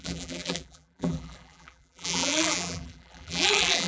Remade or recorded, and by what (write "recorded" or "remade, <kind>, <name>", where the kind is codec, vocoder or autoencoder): remade, vocoder, BigVGAN v2